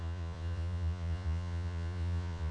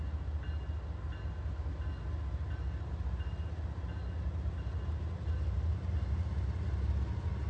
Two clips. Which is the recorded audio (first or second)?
second